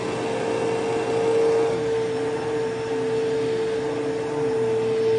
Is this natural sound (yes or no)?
yes